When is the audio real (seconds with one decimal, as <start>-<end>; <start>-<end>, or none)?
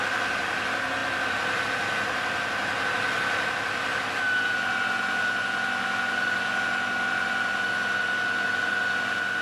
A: 0.0-9.4